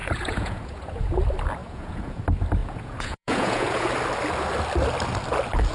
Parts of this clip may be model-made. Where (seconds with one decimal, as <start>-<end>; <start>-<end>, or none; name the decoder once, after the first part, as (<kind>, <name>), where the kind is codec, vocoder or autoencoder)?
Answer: 0.0-1.2 (vocoder, Vocos); 1.6-2.2; 2.6-3.9